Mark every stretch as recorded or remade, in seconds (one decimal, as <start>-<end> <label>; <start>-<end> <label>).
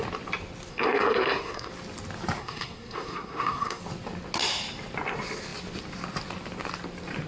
0.0-0.7 recorded; 0.7-1.7 remade; 1.7-2.4 recorded; 2.4-3.8 remade; 3.8-7.3 recorded